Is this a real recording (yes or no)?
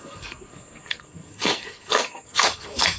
no